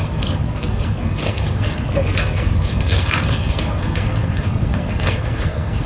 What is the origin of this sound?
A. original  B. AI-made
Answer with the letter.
B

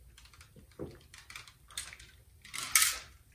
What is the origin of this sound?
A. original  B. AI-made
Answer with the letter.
A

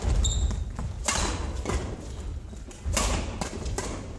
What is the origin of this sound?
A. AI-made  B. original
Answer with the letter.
B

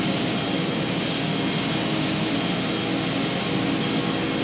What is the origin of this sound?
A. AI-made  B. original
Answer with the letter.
B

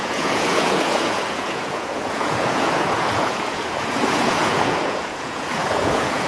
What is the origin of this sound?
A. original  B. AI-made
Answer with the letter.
B